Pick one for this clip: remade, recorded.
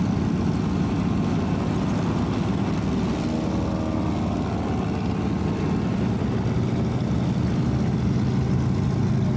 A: recorded